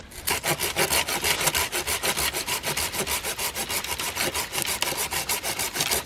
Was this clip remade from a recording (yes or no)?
no